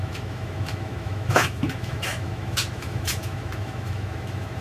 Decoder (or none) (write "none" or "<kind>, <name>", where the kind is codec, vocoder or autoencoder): autoencoder, DAC-VAE